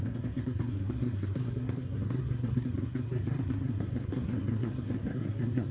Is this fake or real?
fake